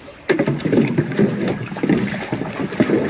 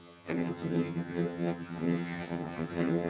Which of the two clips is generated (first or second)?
second